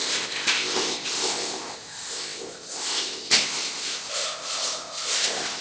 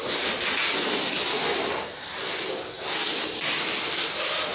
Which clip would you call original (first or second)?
second